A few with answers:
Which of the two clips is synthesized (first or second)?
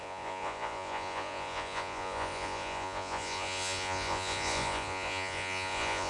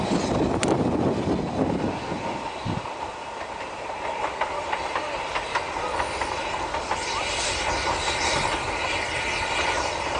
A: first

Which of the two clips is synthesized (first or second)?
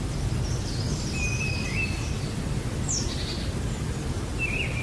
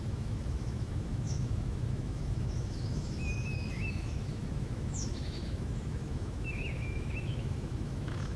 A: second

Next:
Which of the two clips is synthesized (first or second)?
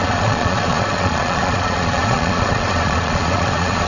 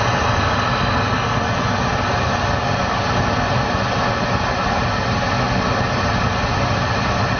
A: first